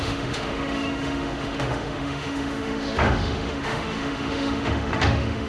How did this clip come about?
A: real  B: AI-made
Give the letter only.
B